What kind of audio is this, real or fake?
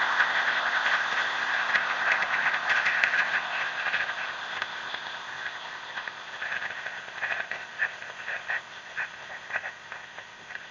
fake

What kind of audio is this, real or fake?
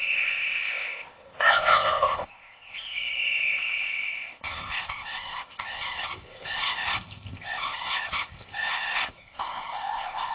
fake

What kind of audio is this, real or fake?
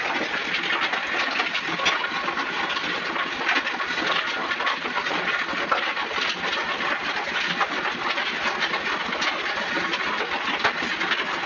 real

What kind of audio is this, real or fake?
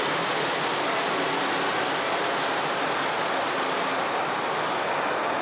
real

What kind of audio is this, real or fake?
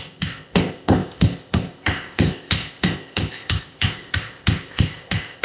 fake